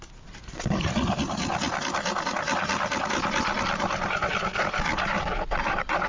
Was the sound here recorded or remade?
recorded